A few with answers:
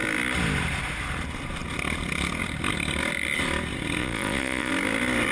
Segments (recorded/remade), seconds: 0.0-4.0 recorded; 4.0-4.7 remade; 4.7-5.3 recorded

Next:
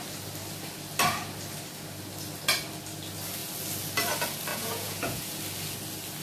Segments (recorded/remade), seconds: 0.0-4.5 recorded; 4.5-5.4 remade; 5.4-6.2 recorded

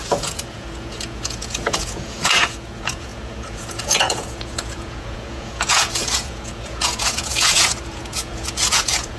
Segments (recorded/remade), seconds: 0.0-9.2 remade

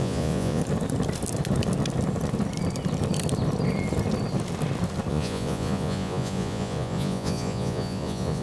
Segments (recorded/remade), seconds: 0.0-0.6 remade; 0.6-5.1 recorded; 5.1-8.4 remade